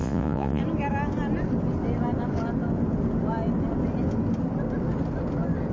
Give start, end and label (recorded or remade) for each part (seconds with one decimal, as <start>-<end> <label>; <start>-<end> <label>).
0.0-0.6 remade; 0.6-5.7 recorded